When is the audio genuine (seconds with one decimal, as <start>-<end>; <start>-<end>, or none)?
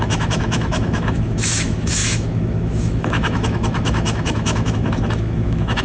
none